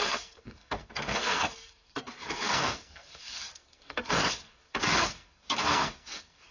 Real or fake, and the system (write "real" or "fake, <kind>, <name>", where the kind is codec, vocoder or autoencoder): fake, codec, SNAC